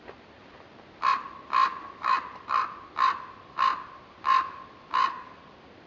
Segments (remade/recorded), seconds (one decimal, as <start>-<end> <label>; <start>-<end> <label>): 0.0-5.9 recorded